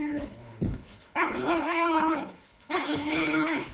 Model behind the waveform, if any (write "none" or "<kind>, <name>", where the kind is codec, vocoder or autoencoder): codec, HILCodec